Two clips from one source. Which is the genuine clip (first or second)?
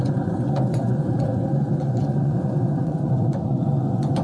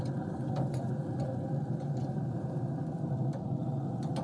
second